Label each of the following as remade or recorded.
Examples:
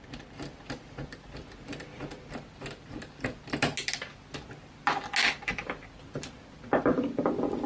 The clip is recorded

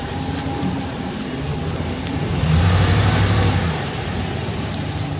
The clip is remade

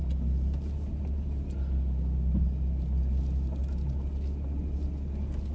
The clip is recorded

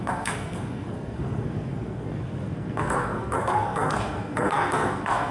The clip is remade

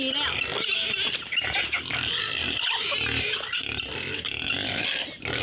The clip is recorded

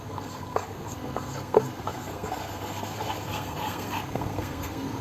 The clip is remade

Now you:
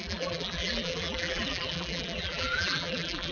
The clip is remade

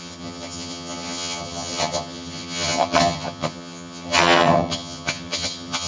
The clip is remade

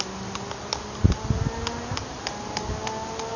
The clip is recorded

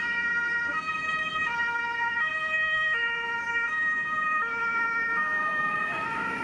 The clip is remade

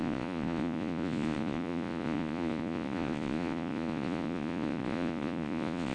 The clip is remade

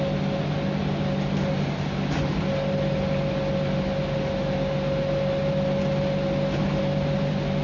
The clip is recorded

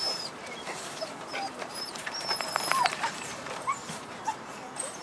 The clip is remade